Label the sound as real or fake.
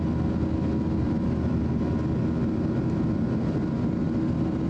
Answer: real